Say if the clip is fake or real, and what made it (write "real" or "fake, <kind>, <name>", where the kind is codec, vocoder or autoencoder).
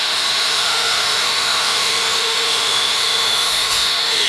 fake, autoencoder, DAC-VAE